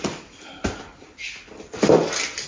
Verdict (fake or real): real